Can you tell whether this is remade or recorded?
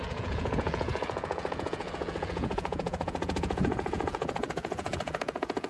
remade